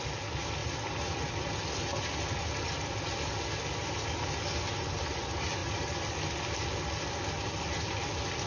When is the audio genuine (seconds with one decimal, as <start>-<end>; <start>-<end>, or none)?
0.0-8.5